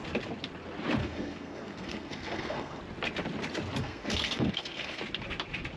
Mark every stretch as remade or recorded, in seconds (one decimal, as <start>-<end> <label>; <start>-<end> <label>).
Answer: 0.0-1.0 recorded; 1.0-2.8 remade; 2.8-3.8 recorded; 3.8-5.0 remade; 5.0-5.8 recorded